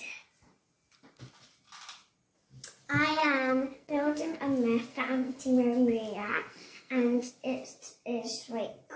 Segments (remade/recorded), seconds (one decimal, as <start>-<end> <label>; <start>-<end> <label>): 0.0-3.2 recorded; 3.2-4.4 remade; 4.4-4.9 recorded; 4.9-5.4 remade; 5.4-6.2 recorded; 6.2-7.3 remade; 7.3-9.0 recorded

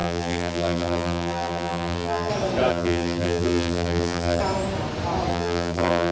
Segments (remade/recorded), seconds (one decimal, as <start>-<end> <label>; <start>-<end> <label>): 0.0-2.3 remade; 2.3-2.7 recorded; 2.7-4.4 remade; 4.4-5.3 recorded; 5.3-6.1 remade

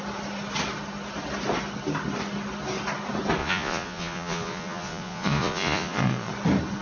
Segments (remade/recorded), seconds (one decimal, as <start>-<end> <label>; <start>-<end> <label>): 0.0-3.4 recorded; 3.4-6.3 remade; 6.3-6.8 recorded

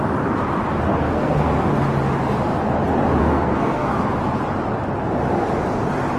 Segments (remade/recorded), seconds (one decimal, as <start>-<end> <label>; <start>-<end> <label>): 0.0-0.9 recorded; 0.9-1.7 remade; 1.7-3.2 recorded; 3.2-4.0 remade; 4.0-6.2 recorded

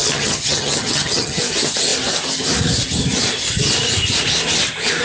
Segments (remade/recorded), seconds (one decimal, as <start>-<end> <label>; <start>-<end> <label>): 0.0-1.4 remade; 1.4-5.0 recorded

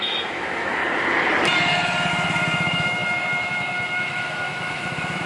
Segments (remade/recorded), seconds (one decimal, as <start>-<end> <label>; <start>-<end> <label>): 0.0-0.8 remade; 0.8-2.1 recorded; 2.1-5.3 remade

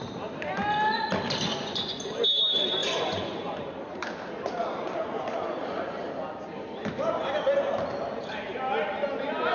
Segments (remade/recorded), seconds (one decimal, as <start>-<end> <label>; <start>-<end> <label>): 0.0-1.5 recorded; 1.5-2.0 remade; 2.0-2.8 recorded; 2.8-3.6 remade; 3.6-5.0 recorded; 5.0-6.0 remade; 6.0-9.5 recorded

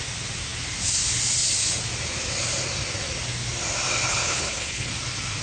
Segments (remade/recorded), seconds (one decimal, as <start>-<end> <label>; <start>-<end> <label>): 0.0-4.1 recorded; 4.1-4.9 remade; 4.9-5.4 recorded